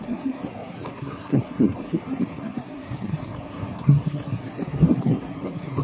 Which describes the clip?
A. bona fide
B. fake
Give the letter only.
B